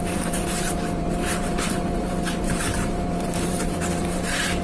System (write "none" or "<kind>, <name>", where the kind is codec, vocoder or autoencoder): vocoder, BigVGAN v2